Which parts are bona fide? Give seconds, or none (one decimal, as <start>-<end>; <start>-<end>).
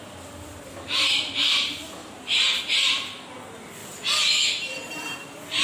0.0-2.0; 2.6-5.6